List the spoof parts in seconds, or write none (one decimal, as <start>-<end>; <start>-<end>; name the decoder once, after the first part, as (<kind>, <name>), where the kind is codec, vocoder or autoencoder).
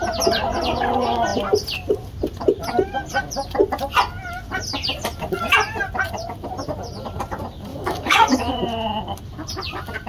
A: 7.7-8.6 (autoencoder, DAC-VAE)